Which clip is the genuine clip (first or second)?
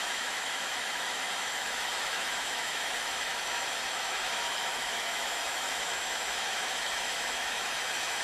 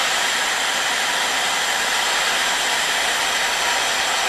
second